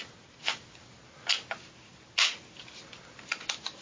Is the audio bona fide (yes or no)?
yes